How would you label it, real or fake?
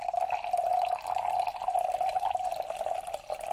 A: real